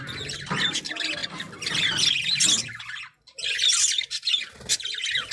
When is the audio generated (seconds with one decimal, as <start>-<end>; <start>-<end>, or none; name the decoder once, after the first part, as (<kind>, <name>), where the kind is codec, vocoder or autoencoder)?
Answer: none